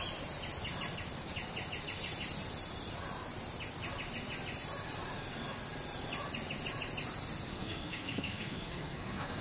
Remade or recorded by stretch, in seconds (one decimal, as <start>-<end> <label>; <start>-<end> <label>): 0.0-7.5 recorded; 7.5-9.4 remade